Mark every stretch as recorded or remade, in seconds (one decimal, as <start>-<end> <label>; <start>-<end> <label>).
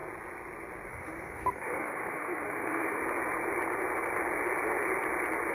0.0-0.9 recorded; 0.9-3.0 remade; 3.0-5.5 recorded